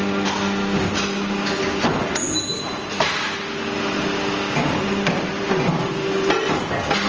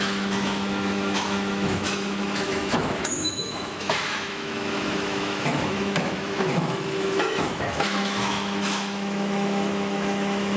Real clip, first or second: first